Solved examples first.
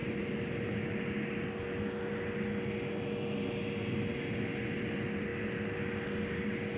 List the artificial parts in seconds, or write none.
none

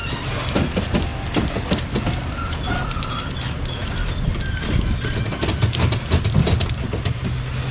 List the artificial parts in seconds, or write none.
none

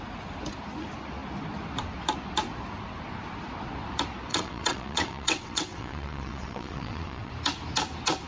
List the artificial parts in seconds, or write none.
4.3-7.3

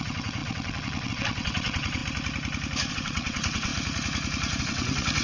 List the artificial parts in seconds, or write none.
0.0-2.0; 2.9-3.7; 4.6-5.2

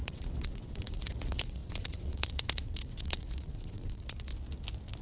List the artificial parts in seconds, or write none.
0.0-4.3

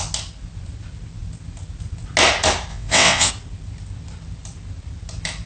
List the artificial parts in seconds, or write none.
2.7-3.3